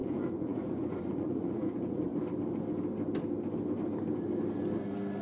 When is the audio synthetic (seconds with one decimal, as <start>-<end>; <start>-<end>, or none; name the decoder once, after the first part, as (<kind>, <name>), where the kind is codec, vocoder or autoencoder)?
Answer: 0.0-2.1 (vocoder, Vocos)